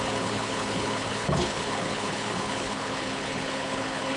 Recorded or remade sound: remade